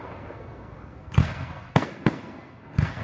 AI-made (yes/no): yes